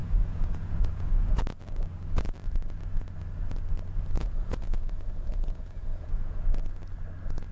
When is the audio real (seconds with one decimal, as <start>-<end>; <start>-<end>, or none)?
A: 1.4-4.2; 6.4-7.5